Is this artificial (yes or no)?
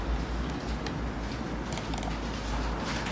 no